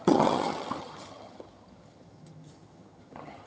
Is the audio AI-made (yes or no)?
yes